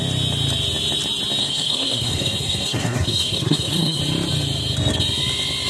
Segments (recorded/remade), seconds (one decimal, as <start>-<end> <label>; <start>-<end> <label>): 0.0-1.4 recorded; 1.4-4.0 remade; 4.0-5.7 recorded